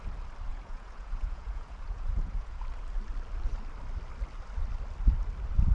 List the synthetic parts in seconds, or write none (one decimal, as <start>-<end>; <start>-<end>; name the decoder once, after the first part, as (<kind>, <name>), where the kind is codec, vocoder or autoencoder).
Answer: 0.5-2.6 (vocoder, Vocos)